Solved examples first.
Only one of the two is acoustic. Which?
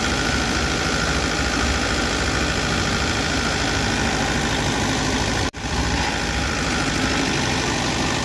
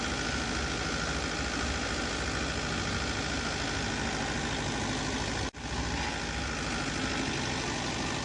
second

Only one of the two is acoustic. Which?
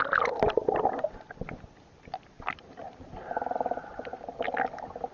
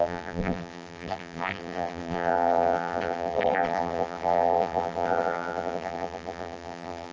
first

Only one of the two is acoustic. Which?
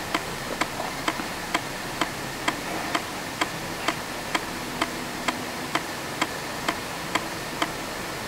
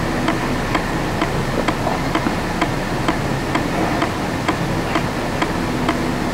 second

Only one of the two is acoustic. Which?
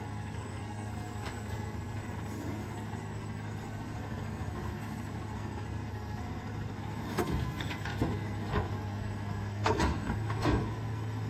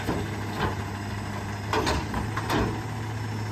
second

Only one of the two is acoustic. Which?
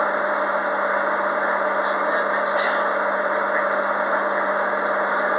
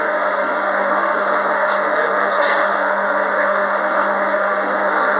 first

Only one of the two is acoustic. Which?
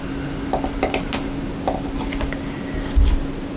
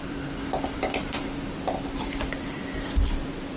first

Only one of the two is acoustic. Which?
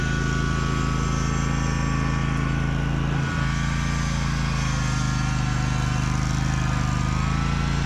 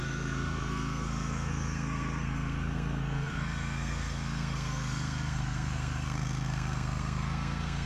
first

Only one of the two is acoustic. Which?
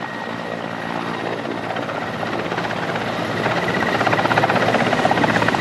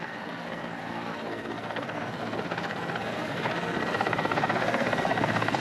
first